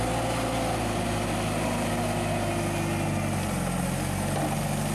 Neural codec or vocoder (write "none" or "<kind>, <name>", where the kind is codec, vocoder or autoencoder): none